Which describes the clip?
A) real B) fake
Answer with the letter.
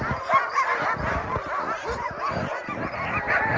A